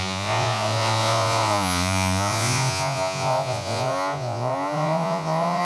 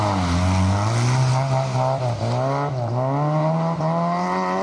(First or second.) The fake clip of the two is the first